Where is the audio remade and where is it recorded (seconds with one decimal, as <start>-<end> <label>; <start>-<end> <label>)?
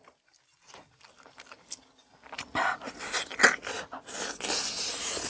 0.0-5.3 recorded